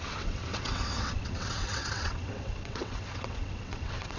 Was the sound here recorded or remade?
remade